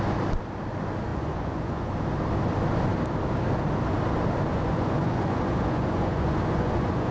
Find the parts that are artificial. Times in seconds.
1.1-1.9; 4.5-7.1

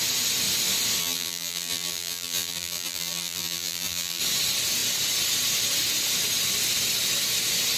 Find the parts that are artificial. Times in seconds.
1.0-4.2

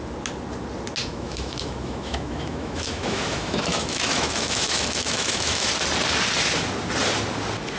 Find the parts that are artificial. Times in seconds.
1.0-5.7

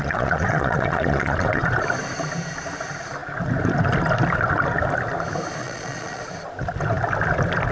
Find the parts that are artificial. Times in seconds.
0.0-1.6; 5.6-6.2

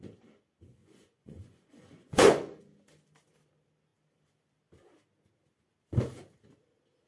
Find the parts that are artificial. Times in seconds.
0.8-2.6

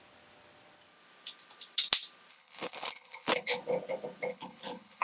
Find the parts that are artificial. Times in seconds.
2.3-3.6; 4.3-5.0